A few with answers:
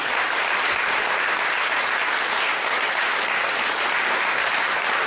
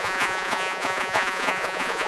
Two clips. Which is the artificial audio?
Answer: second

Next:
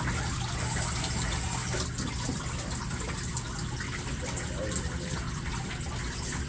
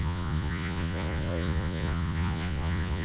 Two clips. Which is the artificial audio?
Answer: second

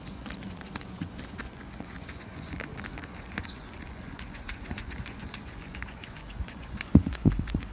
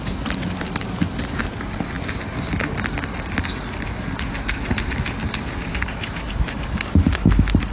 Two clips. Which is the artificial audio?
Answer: first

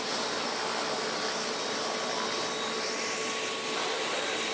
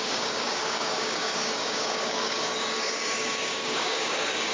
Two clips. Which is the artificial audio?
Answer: second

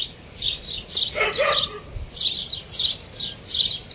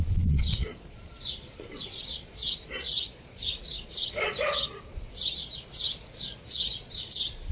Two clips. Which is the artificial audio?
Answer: second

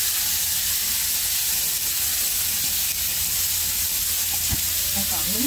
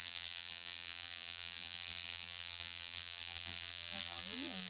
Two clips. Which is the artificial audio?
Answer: second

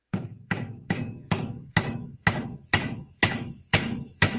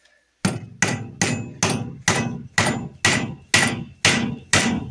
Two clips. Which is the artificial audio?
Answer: first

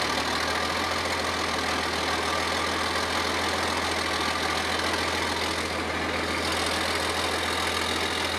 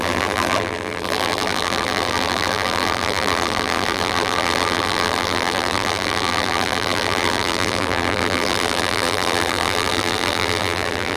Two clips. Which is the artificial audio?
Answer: second